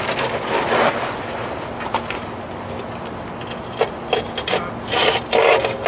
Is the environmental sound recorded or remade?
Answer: recorded